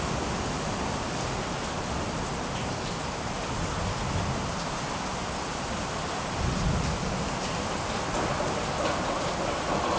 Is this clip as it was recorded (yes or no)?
yes